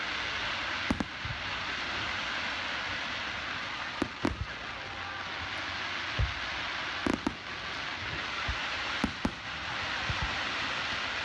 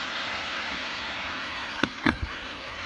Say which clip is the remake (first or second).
second